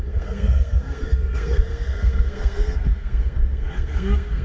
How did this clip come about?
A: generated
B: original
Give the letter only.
A